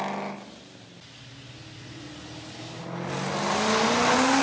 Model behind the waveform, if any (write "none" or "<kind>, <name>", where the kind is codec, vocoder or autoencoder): none